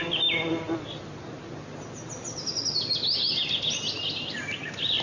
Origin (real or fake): real